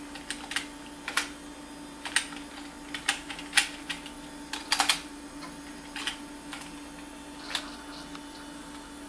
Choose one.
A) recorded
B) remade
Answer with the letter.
A